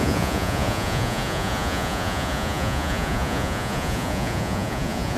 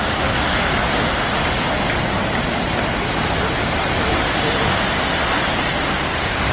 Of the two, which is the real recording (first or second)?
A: second